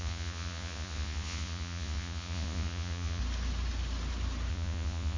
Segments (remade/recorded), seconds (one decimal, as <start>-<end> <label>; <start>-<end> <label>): 0.0-3.2 remade; 3.2-4.5 recorded; 4.5-5.2 remade